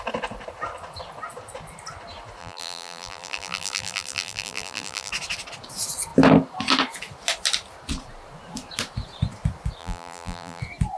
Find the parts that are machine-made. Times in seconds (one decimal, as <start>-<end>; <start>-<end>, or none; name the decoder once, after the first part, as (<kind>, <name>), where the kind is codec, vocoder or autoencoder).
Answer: 2.4-5.1 (vocoder, BigVGAN v2); 9.8-10.6